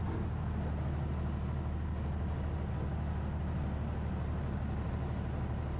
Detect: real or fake real